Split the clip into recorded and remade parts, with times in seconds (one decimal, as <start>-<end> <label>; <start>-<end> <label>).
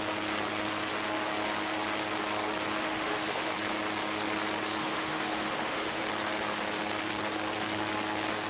0.0-2.8 recorded; 2.8-3.5 remade; 3.5-4.8 recorded; 4.8-6.0 remade; 6.0-8.5 recorded